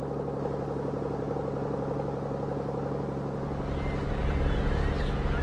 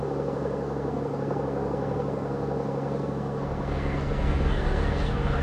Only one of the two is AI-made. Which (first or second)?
second